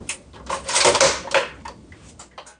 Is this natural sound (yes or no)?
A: yes